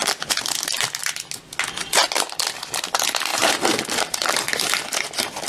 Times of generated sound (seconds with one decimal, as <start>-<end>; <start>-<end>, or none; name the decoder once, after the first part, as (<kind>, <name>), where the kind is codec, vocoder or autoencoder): 3.3-4.4 (vocoder, BigVGAN v2)